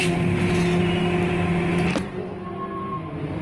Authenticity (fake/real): real